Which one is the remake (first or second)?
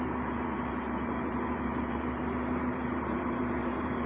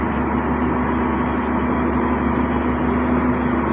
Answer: first